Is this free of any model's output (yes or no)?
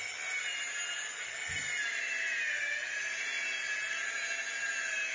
yes